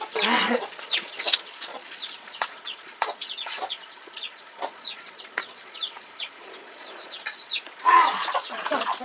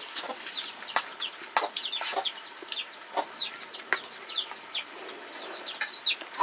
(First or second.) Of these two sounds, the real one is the second